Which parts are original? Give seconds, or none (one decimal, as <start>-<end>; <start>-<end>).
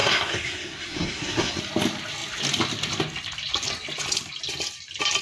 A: 1.6-5.2